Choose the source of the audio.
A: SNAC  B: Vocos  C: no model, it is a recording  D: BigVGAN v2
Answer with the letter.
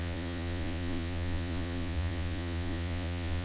B